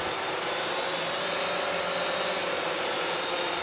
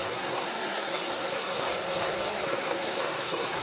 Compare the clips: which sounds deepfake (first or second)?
second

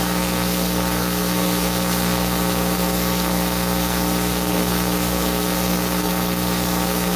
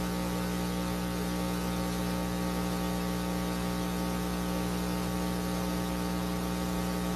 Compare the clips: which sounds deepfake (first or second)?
first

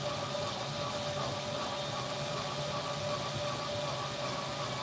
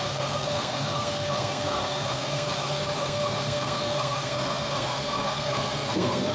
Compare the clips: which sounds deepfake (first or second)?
second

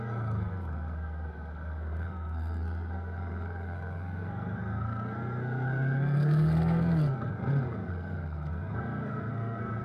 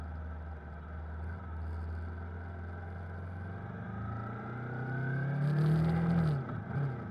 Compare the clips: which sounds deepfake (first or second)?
first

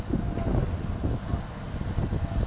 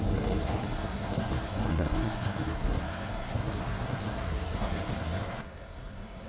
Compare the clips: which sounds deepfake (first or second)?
second